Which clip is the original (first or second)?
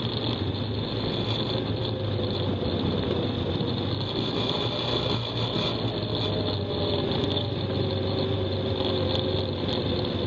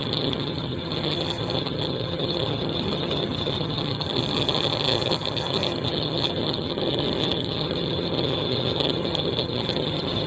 first